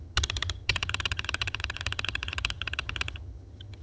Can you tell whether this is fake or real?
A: fake